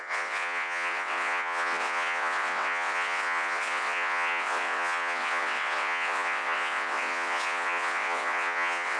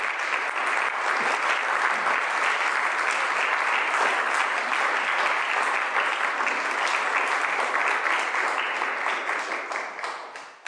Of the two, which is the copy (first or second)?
first